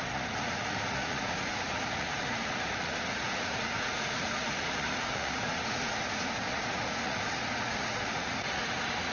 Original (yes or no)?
no